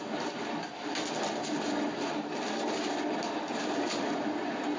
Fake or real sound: real